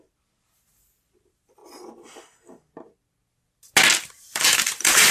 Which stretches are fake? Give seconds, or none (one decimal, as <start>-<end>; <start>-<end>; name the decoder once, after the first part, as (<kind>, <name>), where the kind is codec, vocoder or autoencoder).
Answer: 0.0-1.6 (vocoder, BigVGAN v2); 4.1-5.1